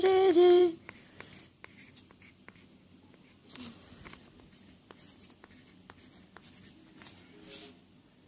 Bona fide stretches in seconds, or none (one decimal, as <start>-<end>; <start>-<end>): 0.0-0.6; 1.7-3.4; 4.3-8.3

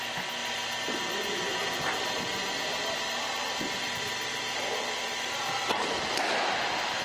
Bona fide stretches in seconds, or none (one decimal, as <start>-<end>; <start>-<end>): 0.0-7.0

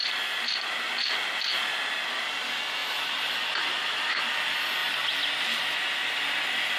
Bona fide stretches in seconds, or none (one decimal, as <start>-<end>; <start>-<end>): 0.7-2.8; 4.2-6.8

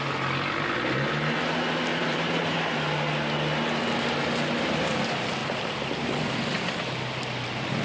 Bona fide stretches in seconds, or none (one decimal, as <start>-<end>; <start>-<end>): 0.0-1.9; 2.7-7.8

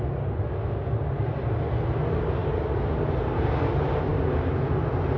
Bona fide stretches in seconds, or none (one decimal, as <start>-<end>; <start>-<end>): 0.0-2.4; 3.4-4.1; 4.6-5.2

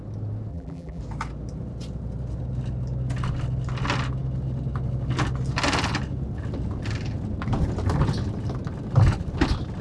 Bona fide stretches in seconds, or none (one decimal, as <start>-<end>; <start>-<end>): 0.0-0.5; 1.0-9.8